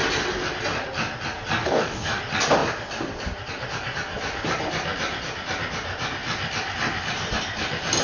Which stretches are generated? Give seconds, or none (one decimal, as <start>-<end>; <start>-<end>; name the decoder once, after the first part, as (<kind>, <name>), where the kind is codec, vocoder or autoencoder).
1.6-2.2 (codec, DAC)